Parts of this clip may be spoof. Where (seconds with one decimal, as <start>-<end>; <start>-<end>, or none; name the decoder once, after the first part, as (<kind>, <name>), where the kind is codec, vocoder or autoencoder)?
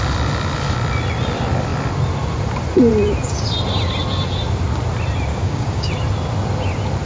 5.3-5.9 (codec, DAC)